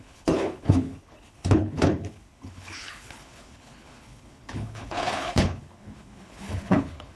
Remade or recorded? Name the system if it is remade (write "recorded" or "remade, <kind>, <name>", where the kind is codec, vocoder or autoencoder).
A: remade, codec, HILCodec